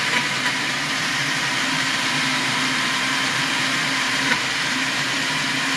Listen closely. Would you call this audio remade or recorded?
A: remade